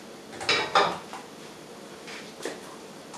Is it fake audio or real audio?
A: real